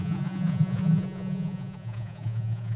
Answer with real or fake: fake